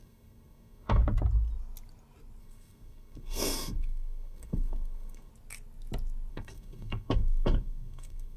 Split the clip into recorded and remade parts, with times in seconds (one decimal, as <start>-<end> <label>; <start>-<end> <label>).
0.0-1.0 remade; 1.0-2.4 recorded; 2.4-5.3 remade; 5.3-6.3 recorded; 6.3-8.4 remade